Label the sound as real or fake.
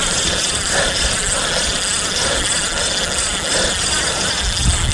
real